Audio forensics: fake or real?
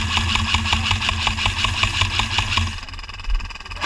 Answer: real